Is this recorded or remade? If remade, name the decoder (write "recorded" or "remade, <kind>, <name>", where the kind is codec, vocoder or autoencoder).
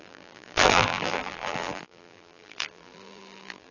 remade, vocoder, BigVGAN v2